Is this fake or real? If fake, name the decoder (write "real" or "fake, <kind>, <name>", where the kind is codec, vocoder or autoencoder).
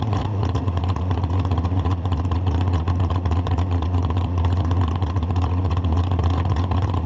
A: fake, vocoder, Vocos